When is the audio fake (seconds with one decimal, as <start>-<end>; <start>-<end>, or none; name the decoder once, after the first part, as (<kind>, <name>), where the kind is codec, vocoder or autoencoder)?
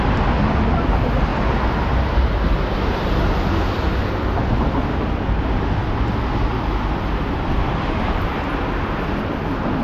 none